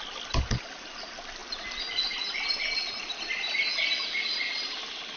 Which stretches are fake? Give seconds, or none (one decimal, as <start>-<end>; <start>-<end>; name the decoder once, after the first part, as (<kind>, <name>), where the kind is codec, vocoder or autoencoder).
none